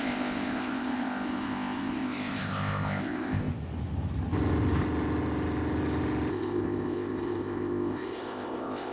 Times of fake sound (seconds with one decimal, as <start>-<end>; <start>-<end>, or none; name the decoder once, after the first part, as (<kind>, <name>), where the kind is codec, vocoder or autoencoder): 0.0-3.5 (codec, ZipCodec); 6.3-8.9